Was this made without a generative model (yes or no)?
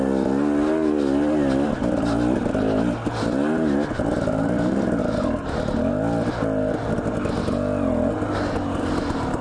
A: yes